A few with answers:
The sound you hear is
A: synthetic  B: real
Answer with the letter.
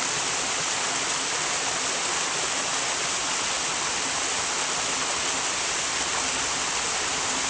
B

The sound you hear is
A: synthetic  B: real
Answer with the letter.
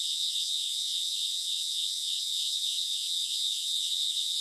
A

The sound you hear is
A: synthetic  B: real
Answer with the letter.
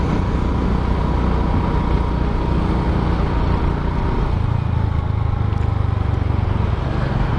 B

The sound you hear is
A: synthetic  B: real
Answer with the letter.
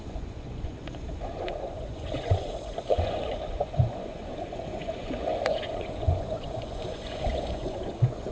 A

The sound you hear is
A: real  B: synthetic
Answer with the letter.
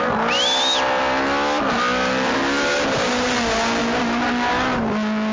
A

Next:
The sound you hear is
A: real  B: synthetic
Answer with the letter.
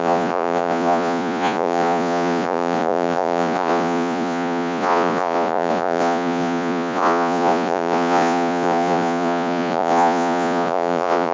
B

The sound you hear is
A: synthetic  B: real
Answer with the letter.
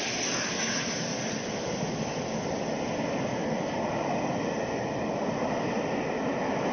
B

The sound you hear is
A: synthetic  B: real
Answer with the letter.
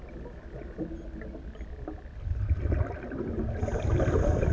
B